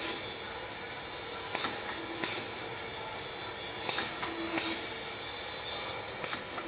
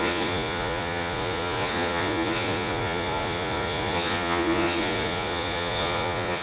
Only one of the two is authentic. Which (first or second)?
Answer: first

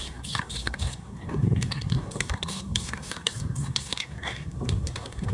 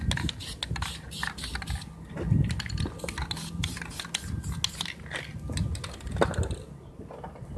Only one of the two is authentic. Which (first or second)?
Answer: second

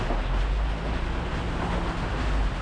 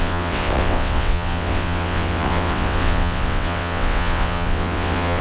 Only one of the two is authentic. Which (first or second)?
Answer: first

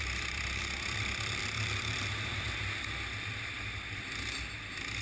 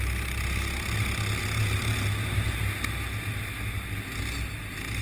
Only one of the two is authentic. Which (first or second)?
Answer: second